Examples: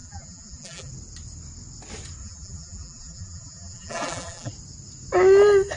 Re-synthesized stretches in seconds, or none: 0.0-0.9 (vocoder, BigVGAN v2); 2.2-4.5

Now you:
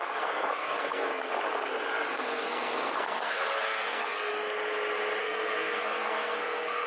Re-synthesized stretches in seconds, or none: 0.0-1.3 (codec, SNAC); 2.1-4.3; 5.2-6.9

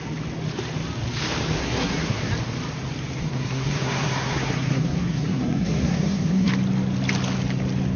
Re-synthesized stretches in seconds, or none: 1.6-2.3 (codec, SNAC); 3.2-6.5

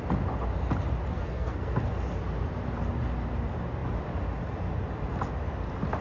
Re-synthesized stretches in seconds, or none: 1.1-1.9 (codec, SNAC)

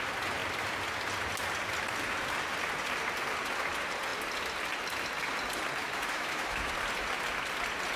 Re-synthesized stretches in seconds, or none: 5.8-6.7 (autoencoder, DAC-VAE)

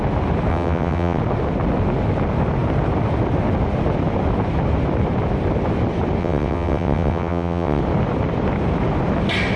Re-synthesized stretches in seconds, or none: 0.5-1.2 (vocoder, WaveNeXt); 6.2-7.8

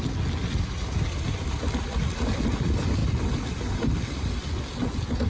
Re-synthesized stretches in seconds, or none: none

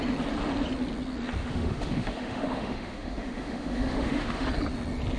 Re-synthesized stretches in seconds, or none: 1.4-4.5 (autoencoder, DAC-VAE)